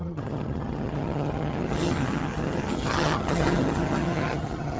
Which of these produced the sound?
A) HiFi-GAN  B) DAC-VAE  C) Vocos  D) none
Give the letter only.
A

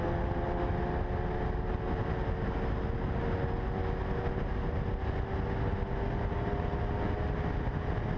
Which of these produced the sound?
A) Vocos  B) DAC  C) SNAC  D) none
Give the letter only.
D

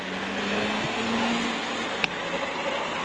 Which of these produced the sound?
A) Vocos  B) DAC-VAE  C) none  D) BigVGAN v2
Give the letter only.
C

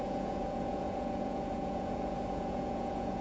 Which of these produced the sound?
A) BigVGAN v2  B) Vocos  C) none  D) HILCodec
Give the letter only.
B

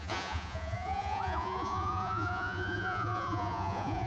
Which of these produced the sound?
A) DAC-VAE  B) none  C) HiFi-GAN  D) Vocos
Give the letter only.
D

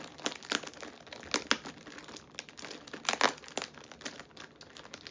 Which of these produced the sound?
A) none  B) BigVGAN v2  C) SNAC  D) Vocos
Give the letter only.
A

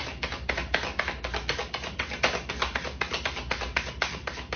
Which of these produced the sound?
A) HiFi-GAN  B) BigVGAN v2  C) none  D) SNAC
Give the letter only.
C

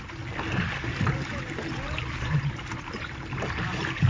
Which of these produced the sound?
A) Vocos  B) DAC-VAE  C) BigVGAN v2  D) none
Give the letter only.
D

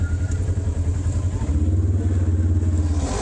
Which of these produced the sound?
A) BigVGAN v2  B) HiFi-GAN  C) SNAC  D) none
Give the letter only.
D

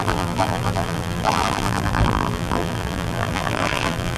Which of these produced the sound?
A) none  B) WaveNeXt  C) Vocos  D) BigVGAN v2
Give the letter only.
D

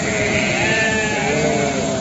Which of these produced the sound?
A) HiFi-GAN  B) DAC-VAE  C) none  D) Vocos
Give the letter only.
C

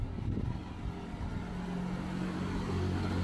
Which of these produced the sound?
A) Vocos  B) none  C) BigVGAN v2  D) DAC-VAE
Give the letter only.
B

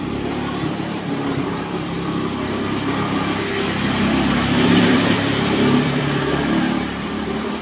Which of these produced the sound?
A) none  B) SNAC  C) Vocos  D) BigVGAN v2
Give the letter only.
D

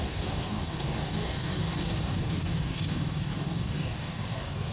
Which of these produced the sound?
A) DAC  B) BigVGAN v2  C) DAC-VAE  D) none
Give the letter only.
A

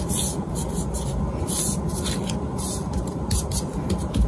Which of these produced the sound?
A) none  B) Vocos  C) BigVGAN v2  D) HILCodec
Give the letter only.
A